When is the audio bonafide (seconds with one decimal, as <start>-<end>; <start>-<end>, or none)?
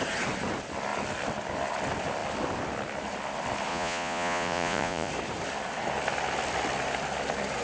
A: 0.0-3.7; 5.1-7.6